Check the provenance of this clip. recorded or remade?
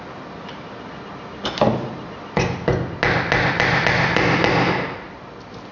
recorded